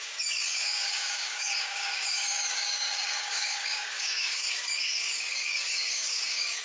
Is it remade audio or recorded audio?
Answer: remade